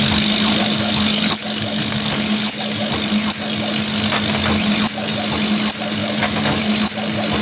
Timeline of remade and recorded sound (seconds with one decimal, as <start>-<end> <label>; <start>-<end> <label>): 0.0-0.6 recorded; 0.6-2.9 remade; 2.9-6.0 recorded; 6.0-6.6 remade; 6.6-7.4 recorded